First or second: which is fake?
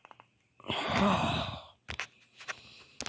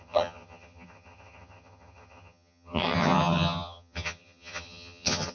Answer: second